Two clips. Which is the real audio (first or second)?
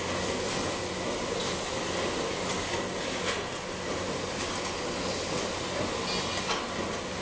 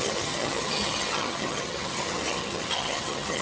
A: first